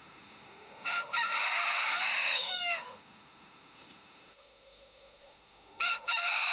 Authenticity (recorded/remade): remade